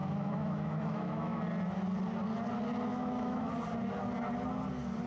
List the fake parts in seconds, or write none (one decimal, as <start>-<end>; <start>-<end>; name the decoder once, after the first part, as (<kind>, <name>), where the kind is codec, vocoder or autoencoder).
0.0-1.4 (autoencoder, DAC-VAE); 2.9-3.5